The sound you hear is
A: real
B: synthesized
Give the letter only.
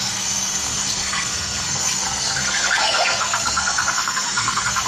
B